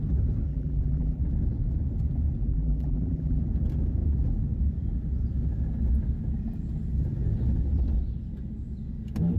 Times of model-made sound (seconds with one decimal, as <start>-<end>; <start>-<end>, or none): 0.5-1.2; 2.5-3.4